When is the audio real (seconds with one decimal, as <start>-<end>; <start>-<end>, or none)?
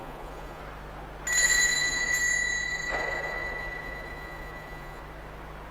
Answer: 0.6-1.4; 2.2-2.7; 5.0-5.7